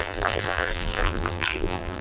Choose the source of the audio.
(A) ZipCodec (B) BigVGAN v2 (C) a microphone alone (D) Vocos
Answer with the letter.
B